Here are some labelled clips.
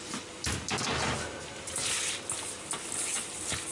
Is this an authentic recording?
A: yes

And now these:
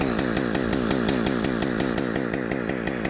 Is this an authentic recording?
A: yes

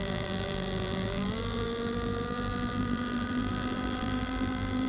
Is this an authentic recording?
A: no